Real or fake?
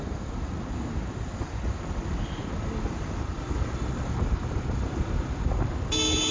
real